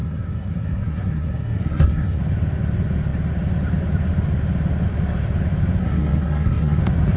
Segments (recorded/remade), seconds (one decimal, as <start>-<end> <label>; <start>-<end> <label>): 0.0-2.2 remade; 2.2-5.8 recorded; 5.8-6.8 remade; 6.8-7.2 recorded